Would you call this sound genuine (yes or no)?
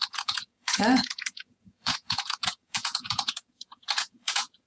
no